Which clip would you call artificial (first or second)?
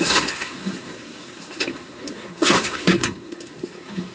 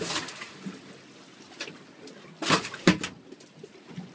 first